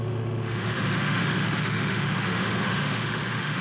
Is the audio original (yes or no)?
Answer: no